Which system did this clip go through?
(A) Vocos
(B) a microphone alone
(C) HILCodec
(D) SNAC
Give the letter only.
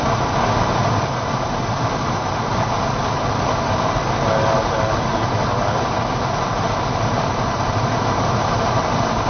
B